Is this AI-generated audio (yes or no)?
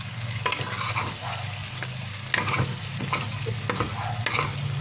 no